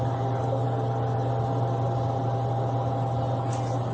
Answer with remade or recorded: recorded